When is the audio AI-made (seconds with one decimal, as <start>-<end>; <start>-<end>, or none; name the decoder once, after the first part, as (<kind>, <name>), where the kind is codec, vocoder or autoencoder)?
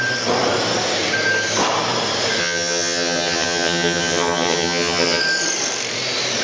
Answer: 2.4-5.2 (vocoder, HiFi-GAN)